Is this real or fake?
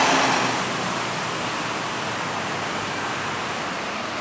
real